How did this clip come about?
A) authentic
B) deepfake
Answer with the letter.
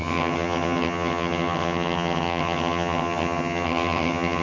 B